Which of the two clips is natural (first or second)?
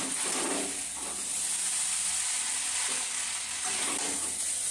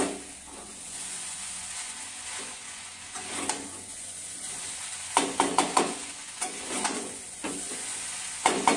first